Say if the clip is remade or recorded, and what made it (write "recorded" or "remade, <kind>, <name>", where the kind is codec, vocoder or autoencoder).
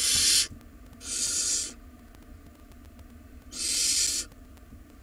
recorded